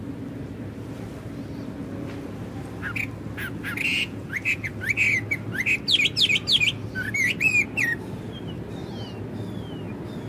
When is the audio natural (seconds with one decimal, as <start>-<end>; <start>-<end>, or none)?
0.0-3.9; 4.7-10.3